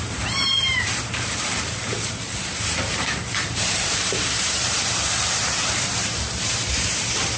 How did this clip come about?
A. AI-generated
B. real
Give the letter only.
A